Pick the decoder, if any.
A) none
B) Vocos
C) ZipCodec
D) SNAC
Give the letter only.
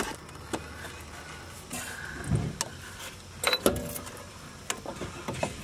A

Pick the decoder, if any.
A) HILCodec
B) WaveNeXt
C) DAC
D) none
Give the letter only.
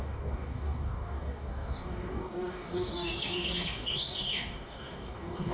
C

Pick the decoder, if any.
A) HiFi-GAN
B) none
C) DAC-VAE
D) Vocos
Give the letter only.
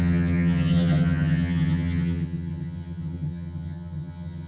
A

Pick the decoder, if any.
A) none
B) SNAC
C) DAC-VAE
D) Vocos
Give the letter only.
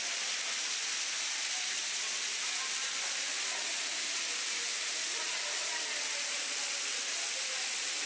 A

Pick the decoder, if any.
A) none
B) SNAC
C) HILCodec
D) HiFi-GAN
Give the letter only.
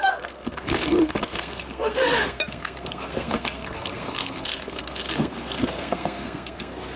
B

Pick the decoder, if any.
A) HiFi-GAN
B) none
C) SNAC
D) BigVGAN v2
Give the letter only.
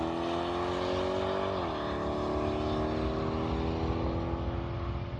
B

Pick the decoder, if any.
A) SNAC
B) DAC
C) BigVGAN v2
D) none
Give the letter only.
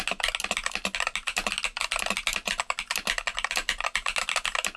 D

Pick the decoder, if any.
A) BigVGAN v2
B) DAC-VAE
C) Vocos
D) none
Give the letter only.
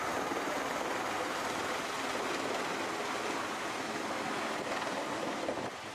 D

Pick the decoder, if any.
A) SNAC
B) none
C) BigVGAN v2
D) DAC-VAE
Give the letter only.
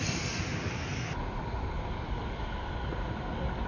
B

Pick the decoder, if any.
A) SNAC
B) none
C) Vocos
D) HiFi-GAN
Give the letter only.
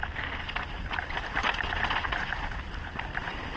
B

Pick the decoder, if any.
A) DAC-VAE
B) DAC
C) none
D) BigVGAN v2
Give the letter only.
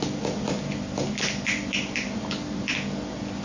C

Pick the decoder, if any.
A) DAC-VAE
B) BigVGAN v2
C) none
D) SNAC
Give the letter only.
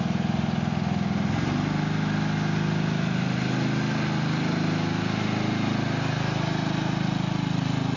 C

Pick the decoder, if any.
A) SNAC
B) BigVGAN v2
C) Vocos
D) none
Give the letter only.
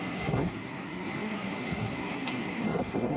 A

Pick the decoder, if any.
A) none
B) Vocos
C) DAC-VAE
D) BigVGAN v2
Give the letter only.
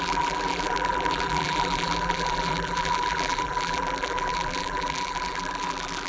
D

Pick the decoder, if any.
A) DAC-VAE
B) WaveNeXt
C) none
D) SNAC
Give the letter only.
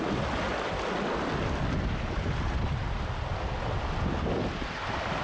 C